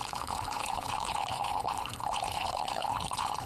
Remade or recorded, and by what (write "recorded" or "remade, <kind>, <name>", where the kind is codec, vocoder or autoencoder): remade, codec, HILCodec